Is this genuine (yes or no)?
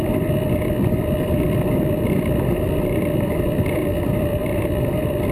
yes